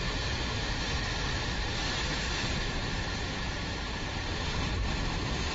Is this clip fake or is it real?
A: fake